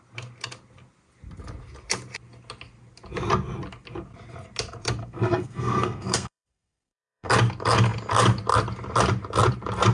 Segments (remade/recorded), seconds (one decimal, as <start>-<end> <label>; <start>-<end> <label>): 0.0-5.0 recorded; 5.0-7.3 remade; 7.3-9.9 recorded